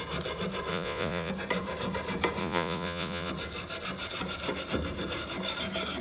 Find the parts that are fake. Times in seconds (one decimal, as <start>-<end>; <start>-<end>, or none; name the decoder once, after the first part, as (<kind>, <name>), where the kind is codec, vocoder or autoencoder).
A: 0.7-1.3 (vocoder, Vocos); 2.4-3.3